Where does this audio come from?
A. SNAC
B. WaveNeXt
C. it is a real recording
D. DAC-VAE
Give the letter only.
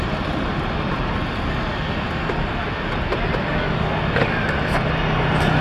C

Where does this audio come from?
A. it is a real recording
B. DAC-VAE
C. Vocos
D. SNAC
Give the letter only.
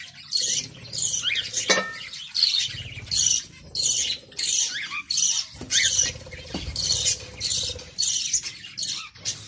A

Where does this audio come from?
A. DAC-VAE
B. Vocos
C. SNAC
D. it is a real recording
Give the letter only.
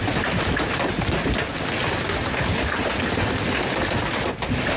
D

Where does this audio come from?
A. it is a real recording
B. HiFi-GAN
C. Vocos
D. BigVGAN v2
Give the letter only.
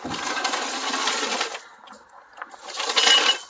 A